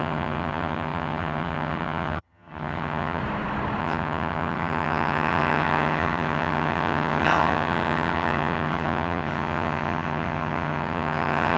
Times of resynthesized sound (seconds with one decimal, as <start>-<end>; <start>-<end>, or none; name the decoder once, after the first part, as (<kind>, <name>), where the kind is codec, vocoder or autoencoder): 0.0-3.2 (vocoder, HiFi-GAN); 3.8-11.6